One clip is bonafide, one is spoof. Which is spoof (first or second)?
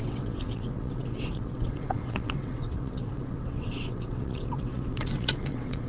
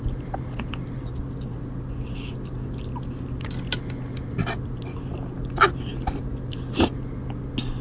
first